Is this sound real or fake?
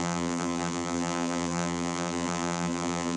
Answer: fake